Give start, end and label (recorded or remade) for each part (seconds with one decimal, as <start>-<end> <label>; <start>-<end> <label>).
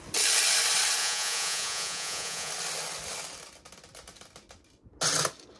0.0-1.0 recorded; 1.0-2.5 remade; 2.5-5.6 recorded